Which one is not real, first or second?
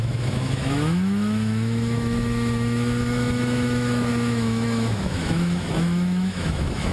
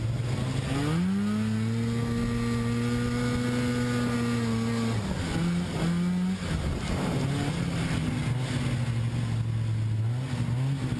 first